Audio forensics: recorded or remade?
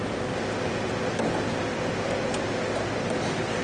recorded